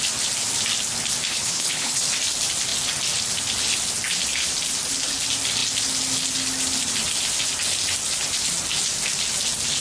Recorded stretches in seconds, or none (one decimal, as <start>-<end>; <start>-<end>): 0.0-1.3; 2.0-9.8